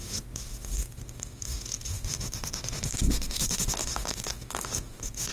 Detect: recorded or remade remade